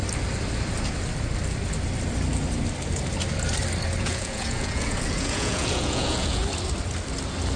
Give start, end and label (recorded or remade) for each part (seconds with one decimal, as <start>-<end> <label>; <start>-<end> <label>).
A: 0.0-4.0 recorded; 4.0-6.4 remade; 6.4-7.6 recorded